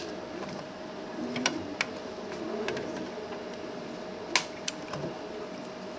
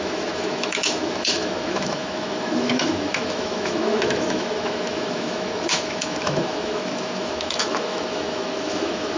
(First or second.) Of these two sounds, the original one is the first